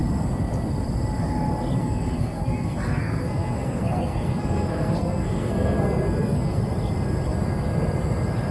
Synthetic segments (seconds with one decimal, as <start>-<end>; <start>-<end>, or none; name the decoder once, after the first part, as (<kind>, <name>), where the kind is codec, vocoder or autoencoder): 1.8-6.6 (codec, SNAC)